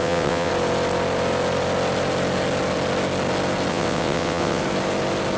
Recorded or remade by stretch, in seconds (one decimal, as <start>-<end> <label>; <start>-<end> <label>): 0.0-0.5 remade; 0.5-3.7 recorded; 3.7-4.6 remade; 4.6-5.4 recorded